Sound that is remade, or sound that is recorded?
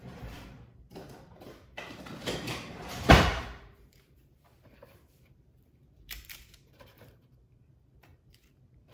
remade